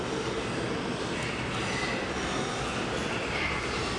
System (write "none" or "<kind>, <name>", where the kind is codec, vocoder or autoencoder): none